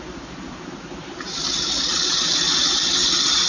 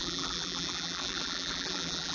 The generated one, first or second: second